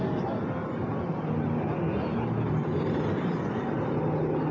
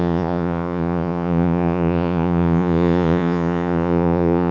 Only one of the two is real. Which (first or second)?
first